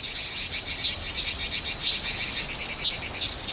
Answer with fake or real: real